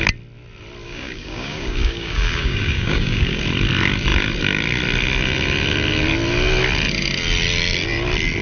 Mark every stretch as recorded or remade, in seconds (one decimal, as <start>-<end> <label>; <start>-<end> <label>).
0.0-0.8 recorded; 0.8-3.4 remade; 3.4-8.4 recorded